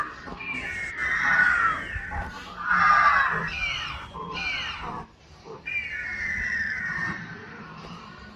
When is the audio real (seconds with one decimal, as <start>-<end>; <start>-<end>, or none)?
0.0-8.4